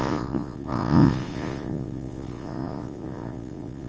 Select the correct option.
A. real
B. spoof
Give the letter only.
B